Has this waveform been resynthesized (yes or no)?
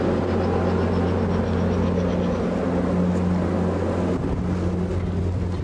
no